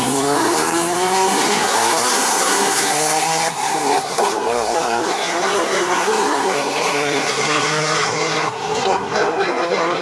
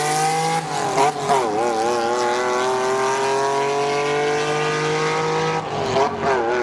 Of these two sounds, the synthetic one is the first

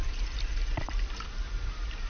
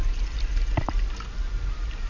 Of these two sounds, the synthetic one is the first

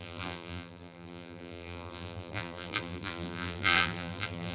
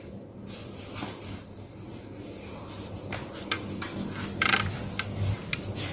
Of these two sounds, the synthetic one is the first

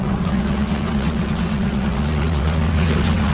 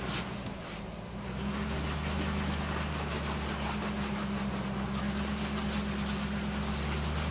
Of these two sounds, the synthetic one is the first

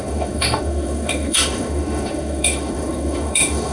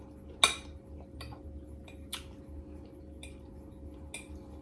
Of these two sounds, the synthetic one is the first